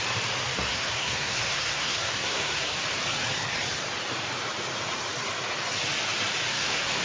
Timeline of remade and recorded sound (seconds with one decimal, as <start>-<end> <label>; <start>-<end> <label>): 0.0-0.7 recorded; 0.7-2.8 remade; 2.8-6.5 recorded; 6.5-7.0 remade